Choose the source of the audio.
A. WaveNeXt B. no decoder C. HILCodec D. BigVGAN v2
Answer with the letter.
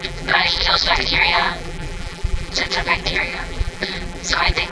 D